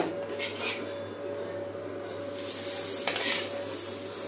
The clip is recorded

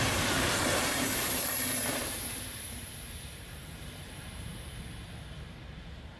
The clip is remade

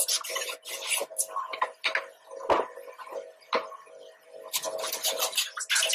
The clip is recorded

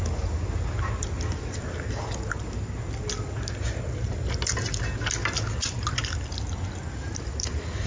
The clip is recorded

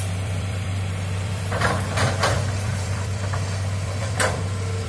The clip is remade